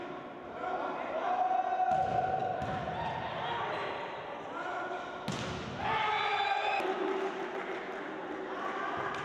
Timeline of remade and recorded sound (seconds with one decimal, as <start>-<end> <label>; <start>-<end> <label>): 0.0-9.2 recorded